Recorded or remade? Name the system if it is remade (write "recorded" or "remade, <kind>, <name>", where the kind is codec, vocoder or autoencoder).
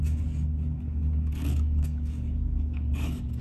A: remade, codec, DAC